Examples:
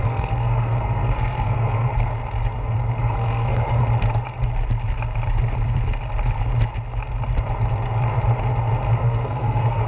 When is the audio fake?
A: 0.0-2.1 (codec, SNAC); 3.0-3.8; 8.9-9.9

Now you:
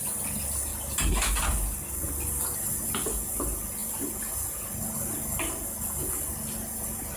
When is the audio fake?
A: none

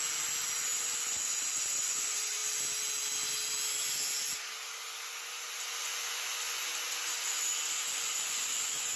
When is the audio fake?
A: 0.8-2.4 (vocoder, Vocos); 5.8-6.7; 8.0-9.0

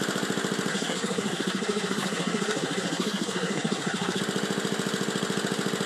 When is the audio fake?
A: 0.7-4.2 (codec, SNAC)

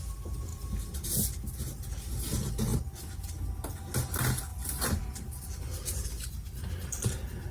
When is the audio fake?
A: 0.5-1.1 (vocoder, BigVGAN v2); 4.5-5.0

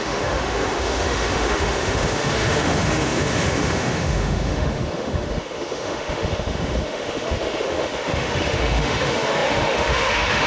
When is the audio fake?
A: 0.0-10.5 (autoencoder, DAC-VAE)